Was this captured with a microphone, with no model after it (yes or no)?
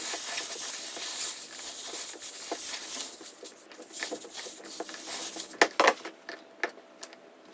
yes